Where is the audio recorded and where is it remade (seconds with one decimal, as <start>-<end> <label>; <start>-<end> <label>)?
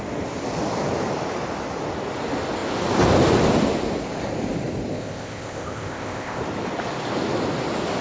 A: 0.0-4.9 recorded; 4.9-6.4 remade; 6.4-8.0 recorded